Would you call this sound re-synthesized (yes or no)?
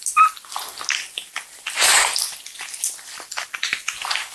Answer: no